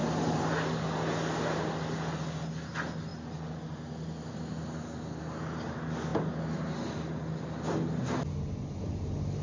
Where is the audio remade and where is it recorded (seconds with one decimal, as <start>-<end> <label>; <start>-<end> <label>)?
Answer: 0.0-9.4 recorded